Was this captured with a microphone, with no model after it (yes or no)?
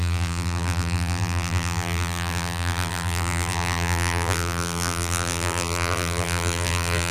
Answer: no